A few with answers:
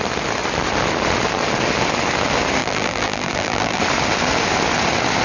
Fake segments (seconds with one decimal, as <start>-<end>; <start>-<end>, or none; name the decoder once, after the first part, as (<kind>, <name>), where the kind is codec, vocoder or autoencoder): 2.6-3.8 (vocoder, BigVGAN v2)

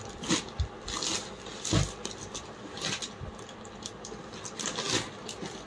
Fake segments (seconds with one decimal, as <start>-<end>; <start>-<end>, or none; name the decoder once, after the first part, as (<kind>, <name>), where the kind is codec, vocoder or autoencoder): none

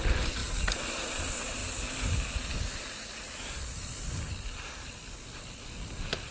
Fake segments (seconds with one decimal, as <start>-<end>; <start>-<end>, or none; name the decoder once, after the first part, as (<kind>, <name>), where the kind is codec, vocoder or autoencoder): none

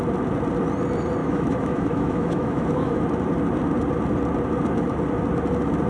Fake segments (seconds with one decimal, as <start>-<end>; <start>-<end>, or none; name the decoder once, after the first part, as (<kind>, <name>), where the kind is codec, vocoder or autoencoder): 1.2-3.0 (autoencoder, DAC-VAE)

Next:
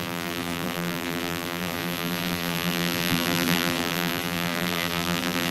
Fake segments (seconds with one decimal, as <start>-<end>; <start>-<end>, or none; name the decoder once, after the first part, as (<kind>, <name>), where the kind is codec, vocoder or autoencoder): 0.0-5.5 (vocoder, BigVGAN v2)

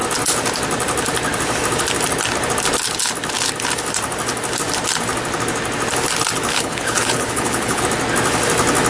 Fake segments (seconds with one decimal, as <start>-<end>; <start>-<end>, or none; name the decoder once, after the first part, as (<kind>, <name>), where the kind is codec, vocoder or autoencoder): 6.5-7.8 (codec, HILCodec)

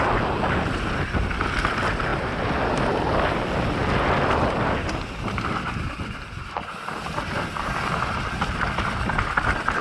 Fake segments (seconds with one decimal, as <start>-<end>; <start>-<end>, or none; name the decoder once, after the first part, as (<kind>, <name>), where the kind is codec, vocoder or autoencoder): none